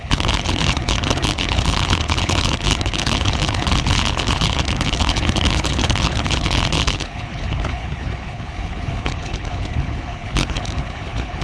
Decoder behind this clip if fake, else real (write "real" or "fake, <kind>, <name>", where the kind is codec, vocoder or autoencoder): fake, codec, HILCodec